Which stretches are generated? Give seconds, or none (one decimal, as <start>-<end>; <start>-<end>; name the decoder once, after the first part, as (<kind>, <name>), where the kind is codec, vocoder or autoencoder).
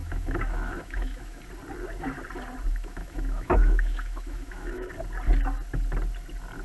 0.0-1.4 (autoencoder, DAC-VAE); 2.7-4.9